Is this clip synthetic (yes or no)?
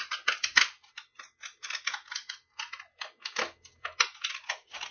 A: no